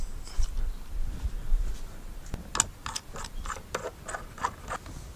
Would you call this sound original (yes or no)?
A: yes